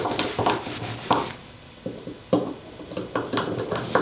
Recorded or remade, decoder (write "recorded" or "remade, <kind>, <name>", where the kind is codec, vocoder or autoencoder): recorded